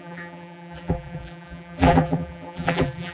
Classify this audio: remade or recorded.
remade